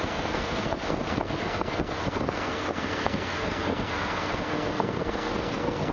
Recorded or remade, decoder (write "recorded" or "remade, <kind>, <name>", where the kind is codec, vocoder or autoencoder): remade, codec, SNAC